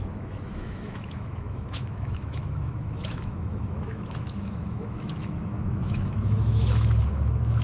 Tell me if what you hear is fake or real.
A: fake